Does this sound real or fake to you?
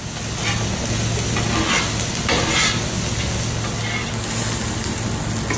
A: real